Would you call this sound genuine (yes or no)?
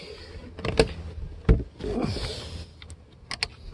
yes